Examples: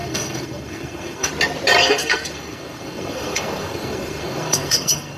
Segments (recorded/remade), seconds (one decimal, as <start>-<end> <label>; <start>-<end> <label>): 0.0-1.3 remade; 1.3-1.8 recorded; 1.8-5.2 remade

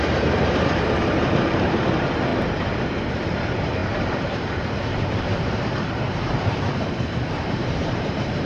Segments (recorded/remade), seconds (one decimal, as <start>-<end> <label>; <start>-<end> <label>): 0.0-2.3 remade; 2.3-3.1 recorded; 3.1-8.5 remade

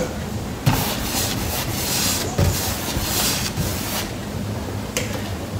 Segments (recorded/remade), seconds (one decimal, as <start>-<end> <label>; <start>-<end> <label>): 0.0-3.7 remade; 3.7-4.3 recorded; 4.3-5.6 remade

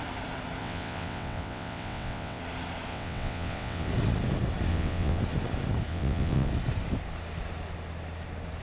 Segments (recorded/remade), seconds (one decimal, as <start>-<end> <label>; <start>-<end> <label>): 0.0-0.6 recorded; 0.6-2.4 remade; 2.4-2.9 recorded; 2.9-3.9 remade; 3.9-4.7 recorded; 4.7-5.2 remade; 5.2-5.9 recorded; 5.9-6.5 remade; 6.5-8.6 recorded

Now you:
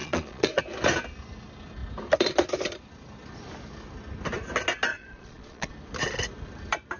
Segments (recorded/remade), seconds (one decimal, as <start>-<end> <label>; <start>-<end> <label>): 0.0-0.6 remade; 0.6-4.9 recorded; 4.9-5.7 remade; 5.7-7.0 recorded

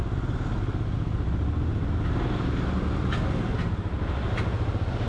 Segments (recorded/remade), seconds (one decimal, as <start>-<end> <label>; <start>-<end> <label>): 0.0-5.1 recorded

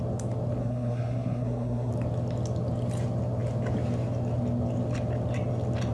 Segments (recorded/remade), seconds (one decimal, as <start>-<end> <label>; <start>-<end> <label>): 0.0-0.6 recorded; 0.6-1.9 remade; 1.9-5.9 recorded

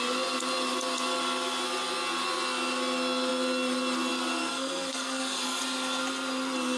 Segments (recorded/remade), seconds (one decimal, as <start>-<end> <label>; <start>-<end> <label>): 0.0-4.5 recorded; 4.5-5.6 remade; 5.6-6.8 recorded